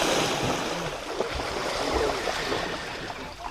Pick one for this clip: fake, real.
real